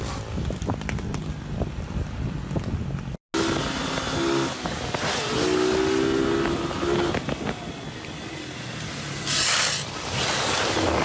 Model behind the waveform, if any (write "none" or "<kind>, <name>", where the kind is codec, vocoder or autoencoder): none